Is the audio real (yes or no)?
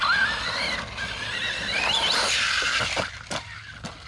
yes